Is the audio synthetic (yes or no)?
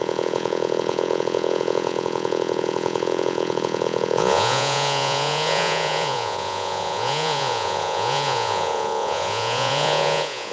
yes